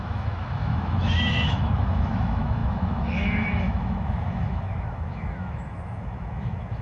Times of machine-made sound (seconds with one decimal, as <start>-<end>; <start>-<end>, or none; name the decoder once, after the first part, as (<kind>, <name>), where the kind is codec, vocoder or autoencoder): 0.0-6.8 (autoencoder, DAC-VAE)